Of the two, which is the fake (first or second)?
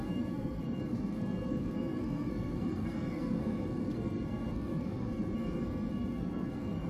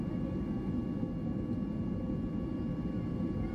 first